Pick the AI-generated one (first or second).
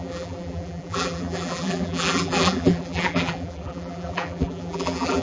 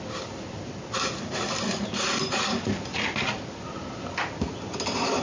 first